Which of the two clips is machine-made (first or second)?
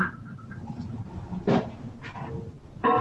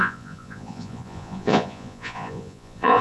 second